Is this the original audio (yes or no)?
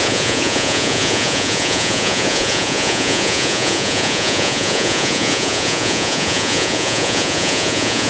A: no